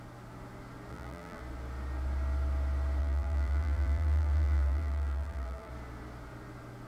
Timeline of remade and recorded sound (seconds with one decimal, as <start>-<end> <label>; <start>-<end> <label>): 0.0-0.9 recorded; 0.9-1.4 remade; 1.4-3.0 recorded; 3.0-5.7 remade; 5.7-6.9 recorded